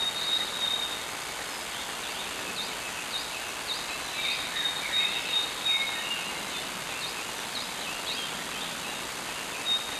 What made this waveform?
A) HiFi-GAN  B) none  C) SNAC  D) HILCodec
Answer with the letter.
B